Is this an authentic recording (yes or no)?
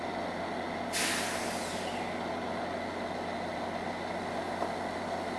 yes